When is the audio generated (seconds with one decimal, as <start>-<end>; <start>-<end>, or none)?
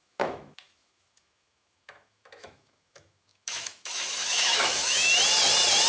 0.0-5.1